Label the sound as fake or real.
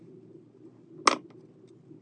real